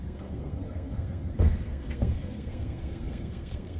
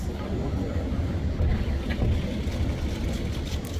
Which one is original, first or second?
second